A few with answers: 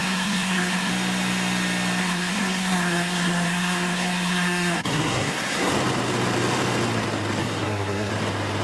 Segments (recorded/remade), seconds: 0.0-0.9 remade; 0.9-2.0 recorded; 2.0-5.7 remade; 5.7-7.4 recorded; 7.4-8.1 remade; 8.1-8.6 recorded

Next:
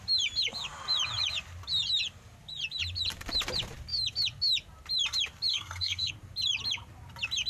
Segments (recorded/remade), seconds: 0.0-5.5 recorded; 5.5-6.1 remade; 6.1-7.5 recorded

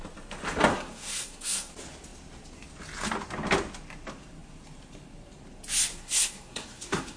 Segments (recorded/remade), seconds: 0.0-0.7 recorded; 0.7-1.7 remade; 1.7-5.9 recorded; 5.9-7.2 remade

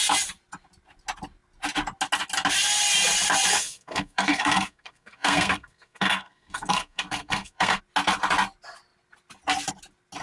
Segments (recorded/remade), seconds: 0.0-3.5 recorded; 3.5-7.8 remade; 7.8-10.2 recorded

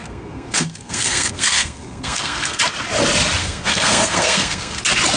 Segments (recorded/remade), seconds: 0.0-2.6 remade; 2.6-3.4 recorded; 3.4-4.8 remade; 4.8-5.2 recorded